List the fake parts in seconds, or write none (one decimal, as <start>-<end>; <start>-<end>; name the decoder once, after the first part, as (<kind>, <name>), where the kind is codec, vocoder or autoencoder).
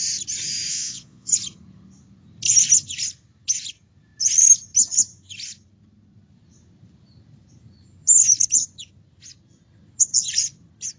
0.7-1.3 (vocoder, Vocos)